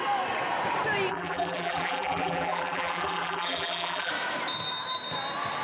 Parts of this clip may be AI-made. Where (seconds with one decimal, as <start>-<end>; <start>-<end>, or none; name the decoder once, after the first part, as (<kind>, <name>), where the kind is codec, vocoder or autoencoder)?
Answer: 1.1-4.1 (vocoder, BigVGAN v2)